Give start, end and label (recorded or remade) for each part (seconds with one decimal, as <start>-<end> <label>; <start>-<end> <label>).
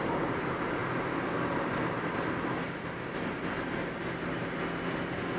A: 0.0-5.4 recorded